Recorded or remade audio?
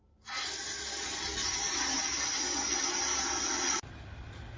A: recorded